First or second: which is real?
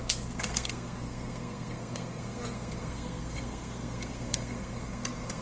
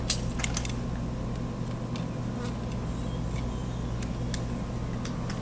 second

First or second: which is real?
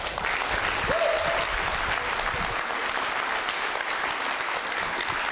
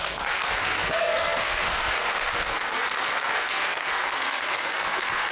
first